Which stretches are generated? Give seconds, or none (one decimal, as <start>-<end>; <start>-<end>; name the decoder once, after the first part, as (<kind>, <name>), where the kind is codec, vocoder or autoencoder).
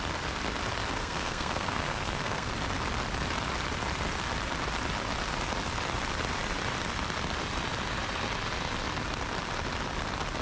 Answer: 1.0-2.5 (codec, SNAC)